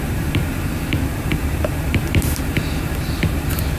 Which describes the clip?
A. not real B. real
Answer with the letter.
A